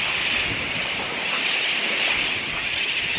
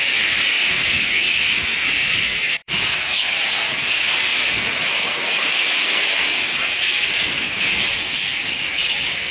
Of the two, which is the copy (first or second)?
second